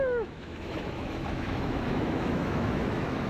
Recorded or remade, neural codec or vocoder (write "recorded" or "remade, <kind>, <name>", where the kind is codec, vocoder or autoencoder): remade, autoencoder, DAC-VAE